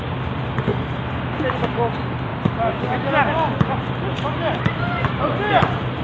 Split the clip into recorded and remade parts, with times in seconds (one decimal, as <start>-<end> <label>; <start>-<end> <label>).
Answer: 0.0-6.0 recorded